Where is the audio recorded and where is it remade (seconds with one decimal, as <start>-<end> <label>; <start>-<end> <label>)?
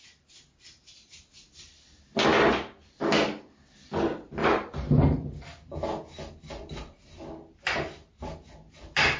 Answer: 0.0-4.4 recorded; 4.4-5.0 remade; 5.0-9.2 recorded